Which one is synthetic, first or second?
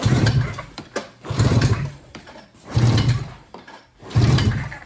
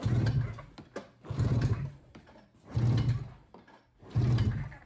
first